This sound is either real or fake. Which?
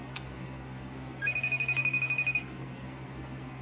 fake